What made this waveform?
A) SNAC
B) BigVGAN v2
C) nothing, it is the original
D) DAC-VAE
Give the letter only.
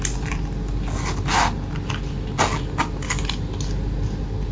C